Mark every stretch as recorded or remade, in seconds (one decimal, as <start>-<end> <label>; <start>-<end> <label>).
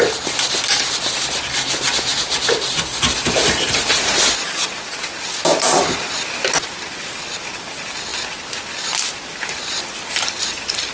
0.0-2.9 recorded; 2.9-4.2 remade; 4.2-10.9 recorded